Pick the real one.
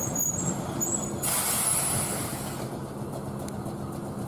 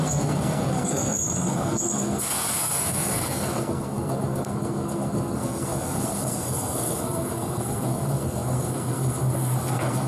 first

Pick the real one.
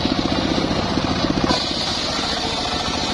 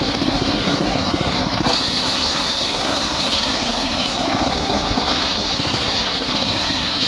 first